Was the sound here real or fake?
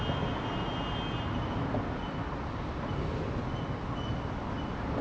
real